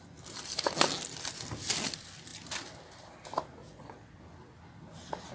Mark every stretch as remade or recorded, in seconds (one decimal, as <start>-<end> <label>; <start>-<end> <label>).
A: 0.0-3.6 recorded; 3.6-4.2 remade; 4.2-5.3 recorded